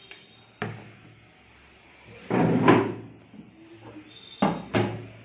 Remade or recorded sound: recorded